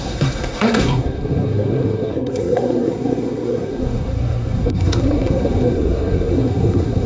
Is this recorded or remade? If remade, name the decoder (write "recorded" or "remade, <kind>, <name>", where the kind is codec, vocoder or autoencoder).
remade, codec, SNAC